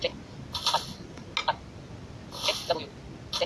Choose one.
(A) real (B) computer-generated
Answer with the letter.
A